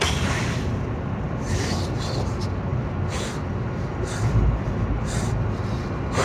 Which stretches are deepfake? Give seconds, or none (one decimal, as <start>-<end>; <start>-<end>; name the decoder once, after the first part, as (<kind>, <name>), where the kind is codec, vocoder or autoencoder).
none